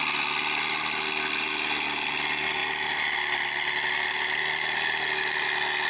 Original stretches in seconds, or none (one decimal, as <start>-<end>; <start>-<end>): 0.0-5.9